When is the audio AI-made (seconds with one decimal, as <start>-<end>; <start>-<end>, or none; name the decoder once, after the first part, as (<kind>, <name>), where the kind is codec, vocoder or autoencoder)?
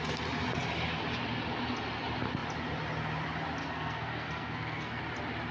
3.6-5.0 (codec, SNAC)